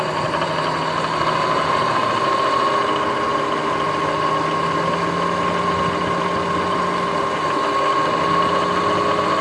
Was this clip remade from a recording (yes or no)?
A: no